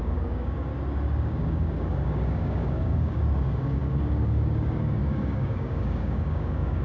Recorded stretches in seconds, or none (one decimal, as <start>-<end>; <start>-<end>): 0.7-1.2